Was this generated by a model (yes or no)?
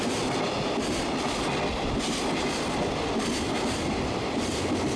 no